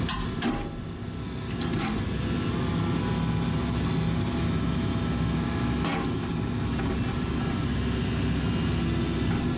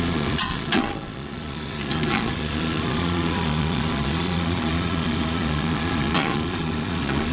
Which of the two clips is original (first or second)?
first